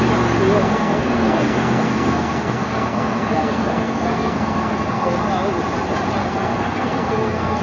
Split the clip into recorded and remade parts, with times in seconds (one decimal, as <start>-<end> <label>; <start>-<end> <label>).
0.0-0.6 recorded; 0.6-5.2 remade; 5.2-6.2 recorded; 6.2-7.6 remade